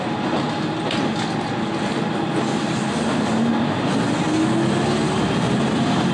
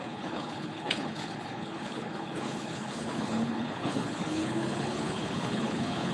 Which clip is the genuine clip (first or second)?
first